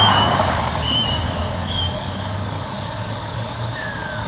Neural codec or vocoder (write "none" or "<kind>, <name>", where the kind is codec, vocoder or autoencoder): codec, DAC